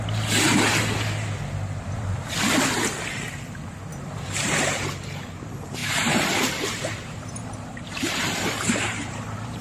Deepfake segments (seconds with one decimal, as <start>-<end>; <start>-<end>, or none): 3.9-4.6; 5.8-9.6